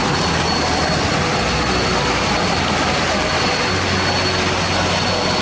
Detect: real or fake real